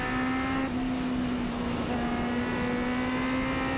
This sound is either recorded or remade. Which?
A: recorded